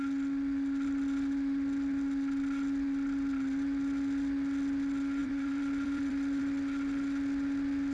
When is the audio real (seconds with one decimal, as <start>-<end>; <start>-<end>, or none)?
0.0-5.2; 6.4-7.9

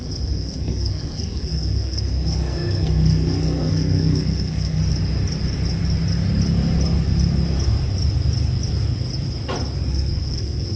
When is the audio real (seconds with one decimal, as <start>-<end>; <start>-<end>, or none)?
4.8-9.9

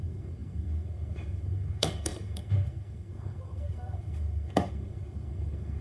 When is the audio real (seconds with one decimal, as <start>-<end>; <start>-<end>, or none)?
none